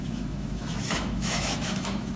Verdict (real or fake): fake